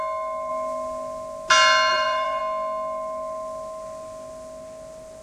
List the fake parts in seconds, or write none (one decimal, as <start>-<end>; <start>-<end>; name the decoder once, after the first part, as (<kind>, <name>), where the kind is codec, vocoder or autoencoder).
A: 1.9-2.4 (vocoder, BigVGAN v2)